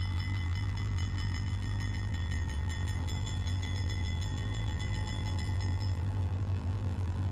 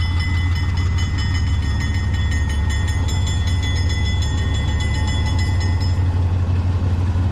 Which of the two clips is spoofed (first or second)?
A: first